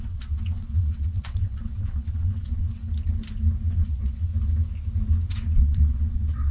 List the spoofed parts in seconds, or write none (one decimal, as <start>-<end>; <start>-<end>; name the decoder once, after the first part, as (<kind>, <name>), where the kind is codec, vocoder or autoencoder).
0.0-2.8 (vocoder, WaveNeXt); 3.7-4.3; 5.3-6.5